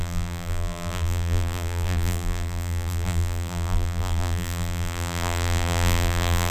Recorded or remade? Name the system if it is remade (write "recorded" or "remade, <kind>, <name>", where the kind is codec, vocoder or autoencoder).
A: remade, vocoder, BigVGAN v2